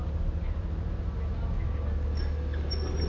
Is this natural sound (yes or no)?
yes